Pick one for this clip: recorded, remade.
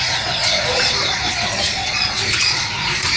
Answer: remade